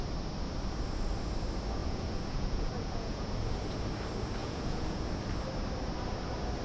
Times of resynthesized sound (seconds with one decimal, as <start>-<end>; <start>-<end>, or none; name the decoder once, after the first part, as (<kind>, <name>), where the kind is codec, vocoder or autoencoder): 1.8-3.3 (vocoder, Vocos); 4.4-5.0